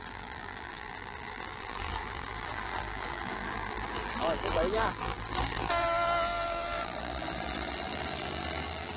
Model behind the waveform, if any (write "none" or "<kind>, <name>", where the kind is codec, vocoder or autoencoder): vocoder, BigVGAN v2